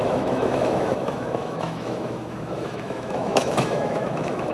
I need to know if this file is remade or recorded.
remade